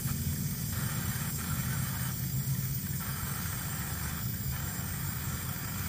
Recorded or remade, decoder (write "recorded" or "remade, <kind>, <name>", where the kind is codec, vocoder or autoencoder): remade, codec, DAC